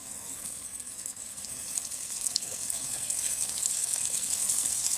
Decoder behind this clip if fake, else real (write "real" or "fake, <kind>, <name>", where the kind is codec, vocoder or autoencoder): fake, codec, SNAC